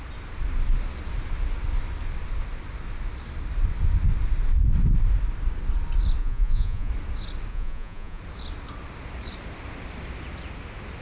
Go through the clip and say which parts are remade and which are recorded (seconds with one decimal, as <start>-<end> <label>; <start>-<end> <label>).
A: 0.0-6.2 recorded; 6.2-6.9 remade; 6.9-7.5 recorded; 7.5-8.2 remade; 8.2-11.0 recorded